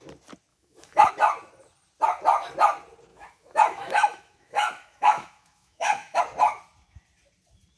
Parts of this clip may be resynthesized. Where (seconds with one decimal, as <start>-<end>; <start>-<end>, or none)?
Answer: 0.5-1.1; 3.1-6.2